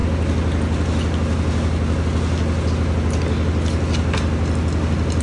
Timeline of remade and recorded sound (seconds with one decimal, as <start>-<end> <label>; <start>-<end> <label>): 0.0-5.2 recorded